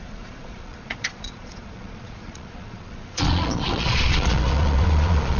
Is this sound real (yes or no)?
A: no